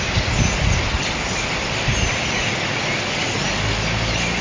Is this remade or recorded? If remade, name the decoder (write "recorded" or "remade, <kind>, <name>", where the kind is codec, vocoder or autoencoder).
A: recorded